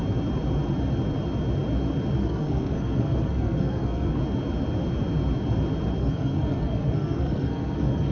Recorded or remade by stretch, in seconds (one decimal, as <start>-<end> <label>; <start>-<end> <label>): 0.0-2.2 recorded; 2.2-4.2 remade; 4.2-6.0 recorded; 6.0-8.1 remade